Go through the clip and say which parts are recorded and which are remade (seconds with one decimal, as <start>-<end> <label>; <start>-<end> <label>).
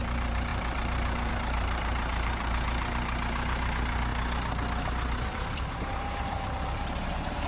0.0-4.1 remade; 4.1-5.3 recorded; 5.3-7.5 remade